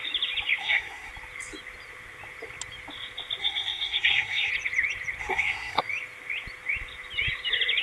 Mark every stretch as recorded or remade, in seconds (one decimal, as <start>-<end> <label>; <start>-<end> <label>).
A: 0.0-0.6 recorded; 0.6-1.1 remade; 1.1-3.4 recorded; 3.4-4.5 remade; 4.5-5.2 recorded; 5.2-5.8 remade; 5.8-7.8 recorded